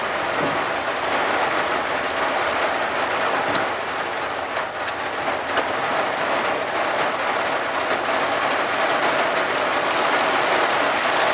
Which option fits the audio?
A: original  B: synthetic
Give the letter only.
A